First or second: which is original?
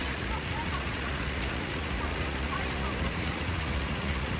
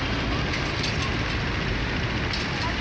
second